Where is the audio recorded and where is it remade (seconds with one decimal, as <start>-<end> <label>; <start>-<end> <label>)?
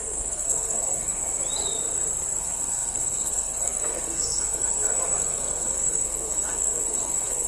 0.0-1.2 remade; 1.2-2.4 recorded; 2.4-7.5 remade